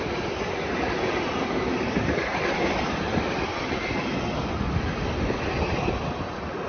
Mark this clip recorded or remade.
remade